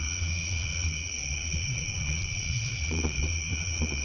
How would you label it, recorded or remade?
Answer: remade